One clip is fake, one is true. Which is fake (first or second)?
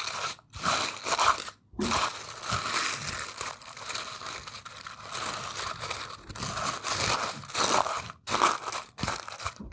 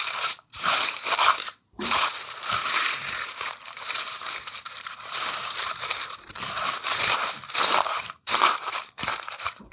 second